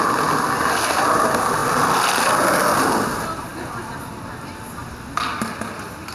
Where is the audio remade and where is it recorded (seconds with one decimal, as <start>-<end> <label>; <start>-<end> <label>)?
0.0-6.1 recorded